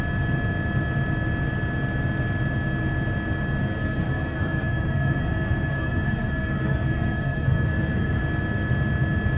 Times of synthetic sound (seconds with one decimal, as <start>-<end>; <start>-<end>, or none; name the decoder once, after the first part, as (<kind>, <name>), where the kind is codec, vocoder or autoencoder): 3.6-8.2 (codec, SNAC)